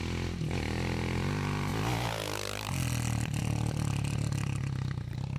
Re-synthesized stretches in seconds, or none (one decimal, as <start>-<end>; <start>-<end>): none